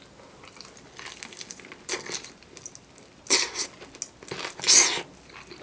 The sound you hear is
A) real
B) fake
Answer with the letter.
A